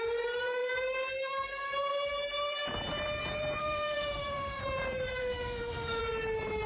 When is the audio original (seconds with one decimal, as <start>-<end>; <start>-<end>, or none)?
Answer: 0.0-3.6; 4.6-5.2; 6.0-6.7